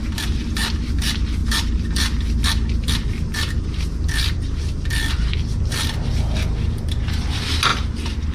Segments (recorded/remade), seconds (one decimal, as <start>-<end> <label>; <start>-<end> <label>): 0.0-1.4 recorded; 1.4-6.1 remade; 6.1-8.3 recorded